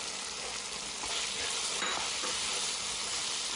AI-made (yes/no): no